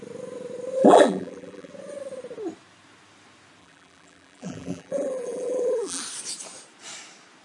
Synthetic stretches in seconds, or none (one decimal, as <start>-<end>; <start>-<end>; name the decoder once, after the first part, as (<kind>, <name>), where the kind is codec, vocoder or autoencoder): 0.8-1.7 (vocoder, BigVGAN v2); 3.6-6.0